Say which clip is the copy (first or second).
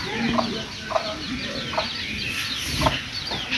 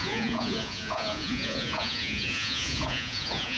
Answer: second